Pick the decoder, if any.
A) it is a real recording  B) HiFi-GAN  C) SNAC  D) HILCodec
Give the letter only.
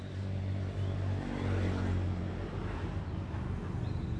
A